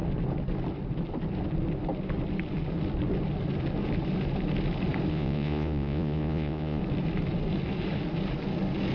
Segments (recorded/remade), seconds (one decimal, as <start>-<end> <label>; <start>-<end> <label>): 0.0-5.1 recorded; 5.1-6.8 remade; 6.8-8.9 recorded